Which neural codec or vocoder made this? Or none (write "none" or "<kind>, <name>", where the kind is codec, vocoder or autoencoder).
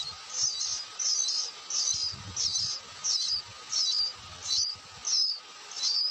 none